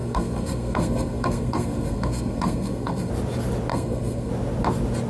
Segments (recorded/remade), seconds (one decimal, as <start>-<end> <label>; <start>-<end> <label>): 0.0-3.1 remade; 3.1-3.7 recorded; 3.7-4.3 remade; 4.3-5.1 recorded